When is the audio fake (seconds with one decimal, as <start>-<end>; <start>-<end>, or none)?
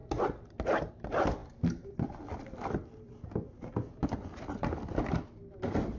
none